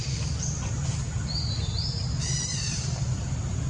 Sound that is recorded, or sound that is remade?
remade